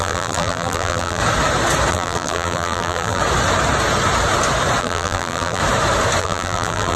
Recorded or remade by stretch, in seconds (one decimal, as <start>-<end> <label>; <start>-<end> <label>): 0.0-1.2 remade; 1.2-1.9 recorded; 1.9-3.2 remade; 3.2-4.8 recorded; 4.8-5.6 remade; 5.6-6.2 recorded; 6.2-7.0 remade